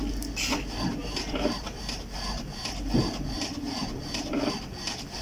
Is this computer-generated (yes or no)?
no